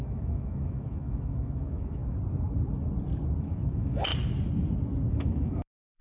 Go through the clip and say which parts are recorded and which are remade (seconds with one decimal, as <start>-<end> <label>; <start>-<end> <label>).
0.0-2.0 remade; 2.0-3.4 recorded; 3.4-4.1 remade; 4.1-5.1 recorded; 5.1-6.0 remade